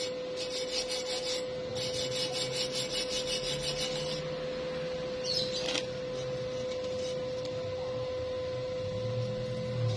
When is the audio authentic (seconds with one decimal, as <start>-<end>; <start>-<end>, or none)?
0.0-10.0